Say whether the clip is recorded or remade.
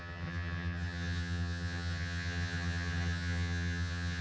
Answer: remade